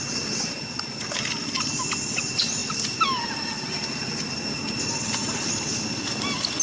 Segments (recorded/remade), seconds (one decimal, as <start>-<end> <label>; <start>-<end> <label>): 0.0-6.6 recorded